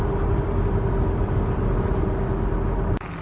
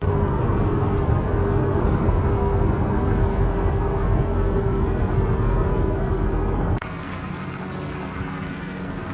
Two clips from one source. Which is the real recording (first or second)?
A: first